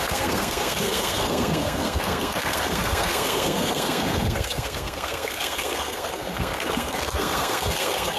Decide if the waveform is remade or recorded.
remade